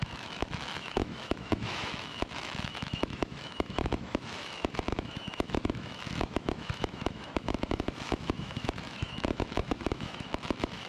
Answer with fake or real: fake